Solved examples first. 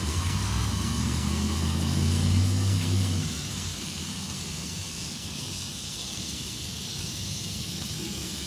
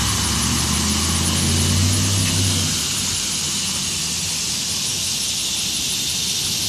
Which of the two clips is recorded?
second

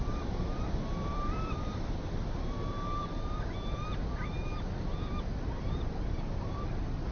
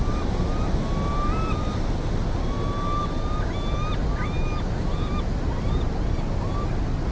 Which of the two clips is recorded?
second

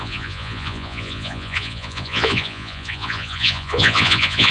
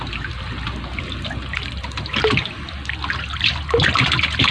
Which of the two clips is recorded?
second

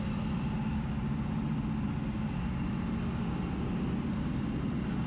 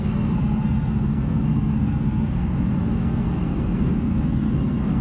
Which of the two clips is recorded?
first